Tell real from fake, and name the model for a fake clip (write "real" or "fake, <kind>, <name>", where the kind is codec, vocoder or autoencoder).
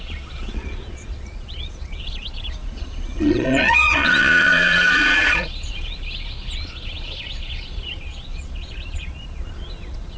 fake, vocoder, Vocos